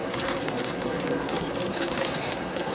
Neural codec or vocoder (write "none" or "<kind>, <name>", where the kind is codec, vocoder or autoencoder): codec, SNAC